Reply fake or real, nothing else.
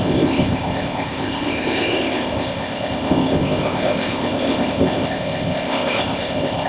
fake